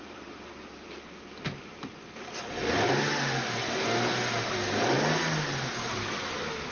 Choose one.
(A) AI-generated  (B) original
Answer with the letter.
B